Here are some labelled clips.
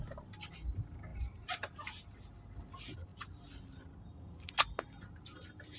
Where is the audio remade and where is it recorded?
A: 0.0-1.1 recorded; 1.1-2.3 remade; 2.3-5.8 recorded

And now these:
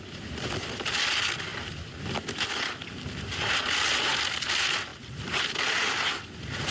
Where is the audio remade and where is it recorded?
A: 0.0-6.7 recorded